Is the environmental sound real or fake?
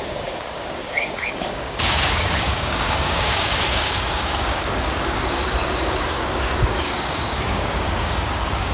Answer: fake